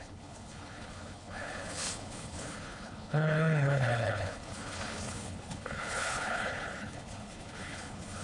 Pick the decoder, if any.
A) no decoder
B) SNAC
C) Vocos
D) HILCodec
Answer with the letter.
D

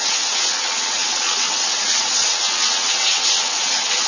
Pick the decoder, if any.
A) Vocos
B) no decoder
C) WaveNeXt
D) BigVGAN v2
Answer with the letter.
C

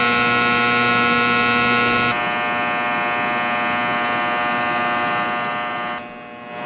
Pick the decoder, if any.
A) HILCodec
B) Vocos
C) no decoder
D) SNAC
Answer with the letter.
C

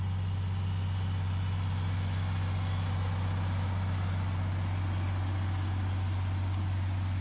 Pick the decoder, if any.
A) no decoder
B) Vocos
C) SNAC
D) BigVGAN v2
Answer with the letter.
A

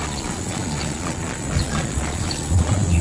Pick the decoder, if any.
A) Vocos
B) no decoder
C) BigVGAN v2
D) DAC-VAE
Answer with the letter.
A